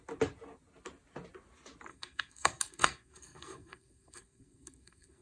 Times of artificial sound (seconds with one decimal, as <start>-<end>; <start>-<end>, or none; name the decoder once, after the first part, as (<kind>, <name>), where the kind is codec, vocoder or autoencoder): 1.9-5.2 (codec, SNAC)